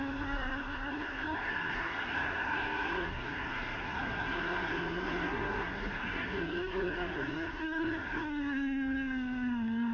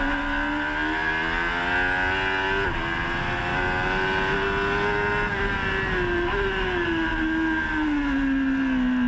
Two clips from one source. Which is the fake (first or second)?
first